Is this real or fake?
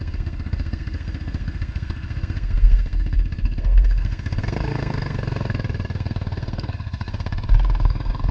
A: fake